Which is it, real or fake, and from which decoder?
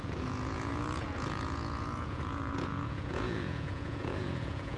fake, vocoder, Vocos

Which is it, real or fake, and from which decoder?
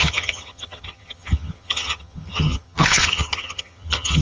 fake, vocoder, HiFi-GAN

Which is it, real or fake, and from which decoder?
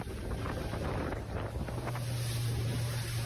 real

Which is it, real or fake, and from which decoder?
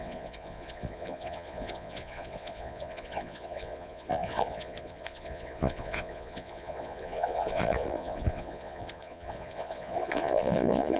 fake, vocoder, Vocos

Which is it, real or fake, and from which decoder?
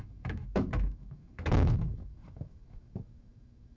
fake, autoencoder, DAC-VAE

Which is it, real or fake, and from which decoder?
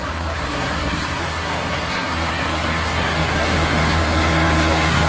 fake, codec, SNAC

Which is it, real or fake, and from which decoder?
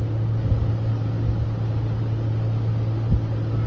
real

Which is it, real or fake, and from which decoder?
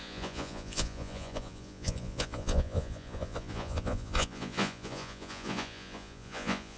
fake, vocoder, Vocos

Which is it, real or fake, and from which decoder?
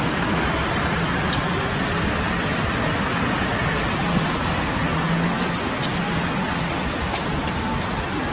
real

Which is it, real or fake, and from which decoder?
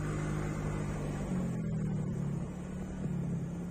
real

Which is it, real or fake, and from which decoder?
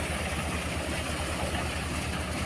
real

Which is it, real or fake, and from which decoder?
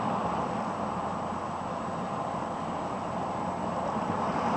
real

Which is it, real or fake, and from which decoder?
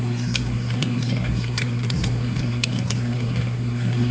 fake, codec, SNAC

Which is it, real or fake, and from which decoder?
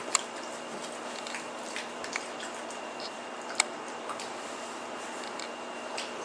fake, vocoder, BigVGAN v2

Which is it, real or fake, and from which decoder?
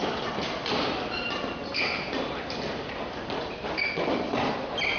real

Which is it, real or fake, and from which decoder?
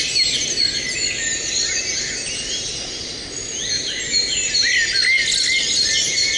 real